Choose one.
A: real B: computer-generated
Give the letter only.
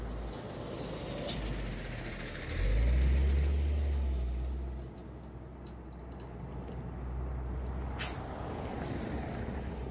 A